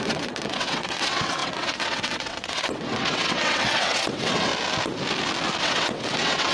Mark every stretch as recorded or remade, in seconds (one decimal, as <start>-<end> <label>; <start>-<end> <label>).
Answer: 0.0-4.5 remade; 4.5-5.6 recorded; 5.6-6.5 remade